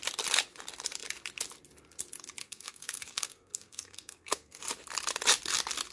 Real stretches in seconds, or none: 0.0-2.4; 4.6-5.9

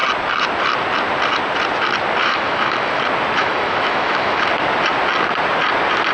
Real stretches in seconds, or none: 0.0-2.2; 3.0-3.4; 4.5-6.1